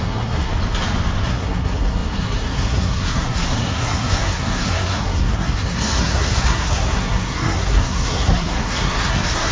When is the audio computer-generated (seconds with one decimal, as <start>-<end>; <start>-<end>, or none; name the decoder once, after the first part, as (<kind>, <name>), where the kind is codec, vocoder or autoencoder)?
0.0-0.5 (codec, SNAC); 1.2-9.5

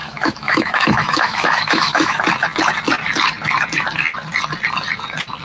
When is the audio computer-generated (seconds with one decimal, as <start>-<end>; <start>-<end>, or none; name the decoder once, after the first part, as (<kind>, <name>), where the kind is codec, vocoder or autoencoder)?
0.0-2.2 (autoencoder, DAC-VAE)

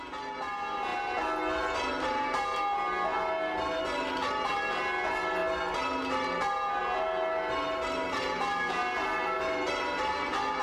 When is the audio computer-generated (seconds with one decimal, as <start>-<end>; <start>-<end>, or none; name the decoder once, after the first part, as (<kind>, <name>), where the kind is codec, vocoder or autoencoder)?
none

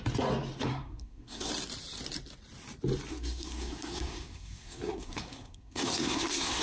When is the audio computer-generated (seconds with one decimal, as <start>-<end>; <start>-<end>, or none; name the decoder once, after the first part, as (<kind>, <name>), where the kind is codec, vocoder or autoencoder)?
0.7-1.5 (codec, SNAC); 3.1-6.6